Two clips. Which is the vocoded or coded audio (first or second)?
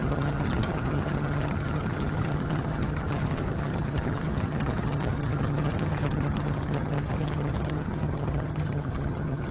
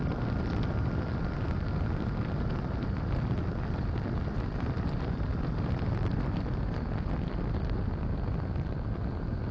first